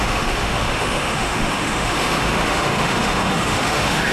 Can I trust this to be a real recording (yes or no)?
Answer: no